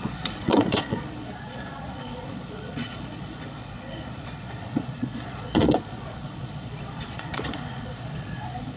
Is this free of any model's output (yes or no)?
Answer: no